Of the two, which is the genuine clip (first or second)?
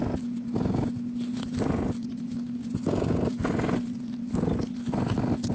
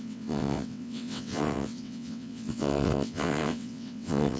first